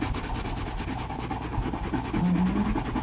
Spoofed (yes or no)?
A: no